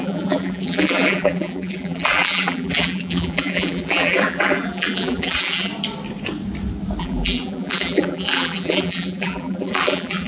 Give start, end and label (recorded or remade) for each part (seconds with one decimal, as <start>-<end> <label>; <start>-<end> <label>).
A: 0.0-5.7 remade; 5.7-7.0 recorded; 7.0-10.3 remade